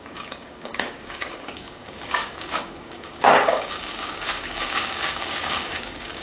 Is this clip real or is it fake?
fake